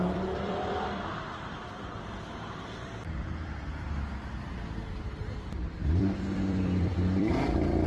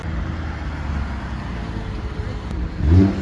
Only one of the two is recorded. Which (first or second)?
second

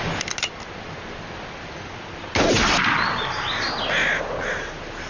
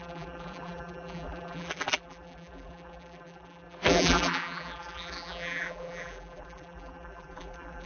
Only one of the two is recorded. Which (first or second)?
first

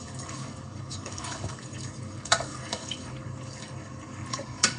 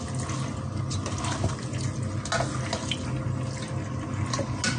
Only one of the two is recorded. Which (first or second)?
second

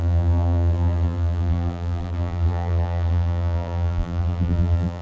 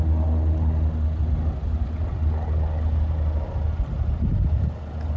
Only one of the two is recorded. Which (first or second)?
second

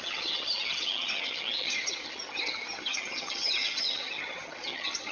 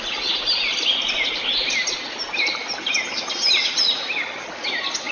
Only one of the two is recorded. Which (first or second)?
second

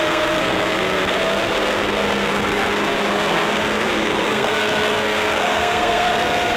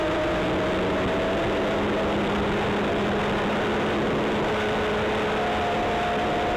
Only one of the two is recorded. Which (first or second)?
second